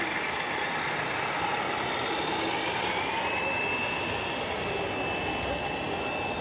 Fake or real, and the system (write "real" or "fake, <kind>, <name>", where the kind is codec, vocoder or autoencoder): real